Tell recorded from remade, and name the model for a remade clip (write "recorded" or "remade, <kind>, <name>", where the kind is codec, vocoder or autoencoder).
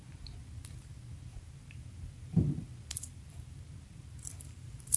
remade, vocoder, BigVGAN v2